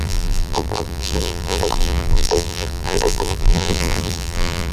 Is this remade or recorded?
remade